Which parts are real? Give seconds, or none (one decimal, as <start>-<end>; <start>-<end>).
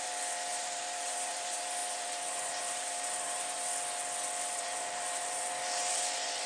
3.7-4.4